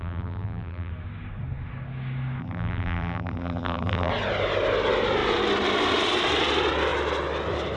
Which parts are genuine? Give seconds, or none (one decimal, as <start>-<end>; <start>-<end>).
0.9-2.4; 4.1-7.8